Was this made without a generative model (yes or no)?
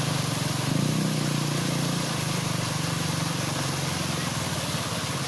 yes